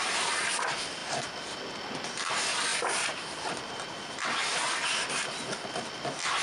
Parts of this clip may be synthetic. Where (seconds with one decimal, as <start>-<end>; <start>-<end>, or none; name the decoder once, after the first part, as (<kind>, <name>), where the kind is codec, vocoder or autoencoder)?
none